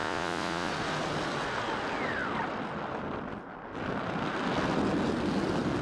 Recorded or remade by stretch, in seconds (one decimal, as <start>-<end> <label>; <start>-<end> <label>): 0.0-0.7 remade; 0.7-5.8 recorded